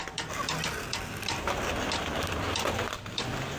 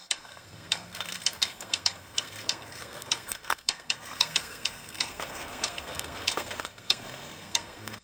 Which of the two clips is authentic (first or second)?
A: first